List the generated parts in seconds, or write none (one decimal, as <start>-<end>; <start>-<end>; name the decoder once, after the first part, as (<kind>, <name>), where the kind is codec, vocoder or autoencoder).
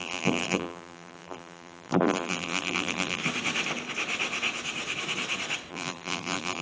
0.0-3.2 (vocoder, BigVGAN v2); 5.7-6.6